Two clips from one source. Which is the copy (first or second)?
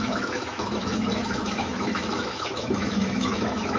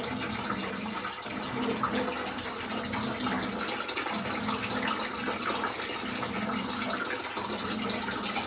first